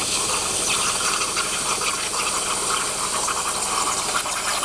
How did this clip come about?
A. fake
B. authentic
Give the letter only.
B